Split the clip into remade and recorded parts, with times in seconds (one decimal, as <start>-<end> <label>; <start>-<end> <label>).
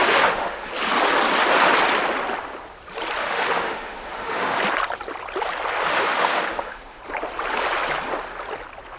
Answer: 0.0-0.7 remade; 0.7-3.2 recorded; 3.2-4.6 remade; 4.6-5.9 recorded; 5.9-7.0 remade; 7.0-9.0 recorded